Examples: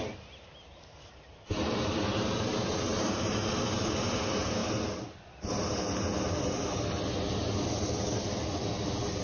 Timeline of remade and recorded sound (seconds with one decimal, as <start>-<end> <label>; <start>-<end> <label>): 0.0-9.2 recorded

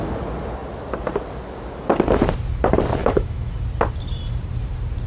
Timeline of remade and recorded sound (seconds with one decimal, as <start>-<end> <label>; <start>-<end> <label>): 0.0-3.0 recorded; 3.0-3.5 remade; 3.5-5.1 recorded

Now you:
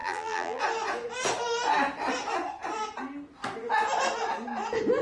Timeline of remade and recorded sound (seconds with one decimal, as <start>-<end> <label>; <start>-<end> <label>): 0.0-0.6 remade; 0.6-5.0 recorded

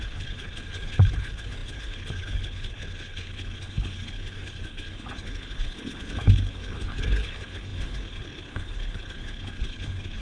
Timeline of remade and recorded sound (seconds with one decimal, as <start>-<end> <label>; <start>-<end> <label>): 0.0-10.2 remade